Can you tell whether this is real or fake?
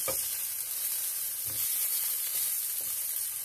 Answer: real